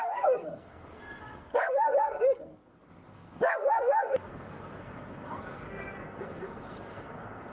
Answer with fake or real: fake